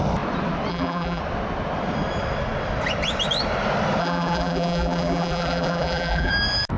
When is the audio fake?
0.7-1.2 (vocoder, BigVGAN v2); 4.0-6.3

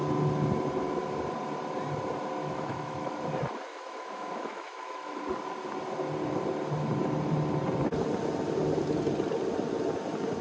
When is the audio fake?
2.4-3.3 (autoencoder, DAC-VAE); 3.7-5.2

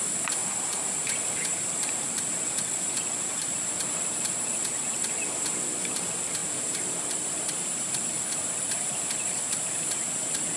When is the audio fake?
0.0-10.6 (vocoder, BigVGAN v2)

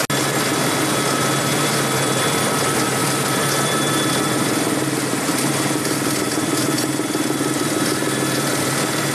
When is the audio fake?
1.6-9.1 (vocoder, BigVGAN v2)

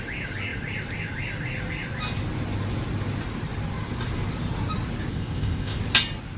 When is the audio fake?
5.1-5.8 (codec, ZipCodec)

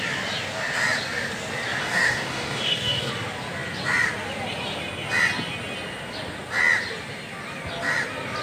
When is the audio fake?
1.8-3.1 (codec, DAC)

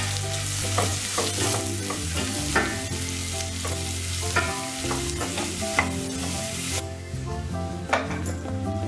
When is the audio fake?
6.2-7.8 (codec, DAC)